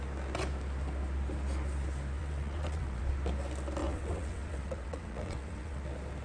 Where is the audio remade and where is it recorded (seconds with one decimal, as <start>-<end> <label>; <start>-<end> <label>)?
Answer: 0.0-2.2 recorded; 2.2-3.0 remade; 3.0-3.8 recorded; 3.8-5.8 remade; 5.8-6.2 recorded